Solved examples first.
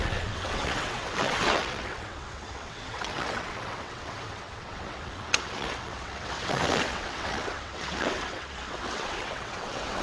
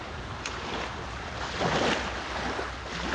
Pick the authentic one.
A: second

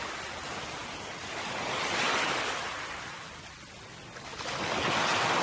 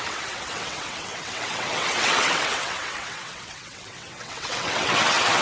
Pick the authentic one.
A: first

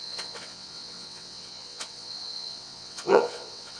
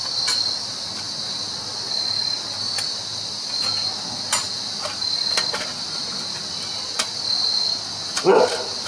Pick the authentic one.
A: second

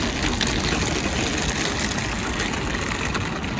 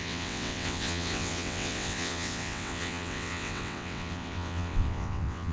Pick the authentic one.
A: first